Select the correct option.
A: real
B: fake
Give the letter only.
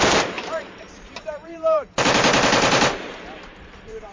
B